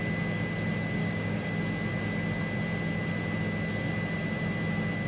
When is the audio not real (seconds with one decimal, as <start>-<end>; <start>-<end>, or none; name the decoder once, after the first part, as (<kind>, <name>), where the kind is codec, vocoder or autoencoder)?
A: 1.0-1.5 (codec, DAC)